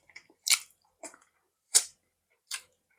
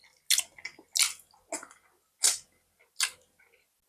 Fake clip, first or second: first